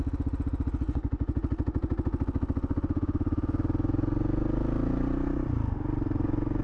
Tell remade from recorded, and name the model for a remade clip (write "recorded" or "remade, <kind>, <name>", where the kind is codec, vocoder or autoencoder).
recorded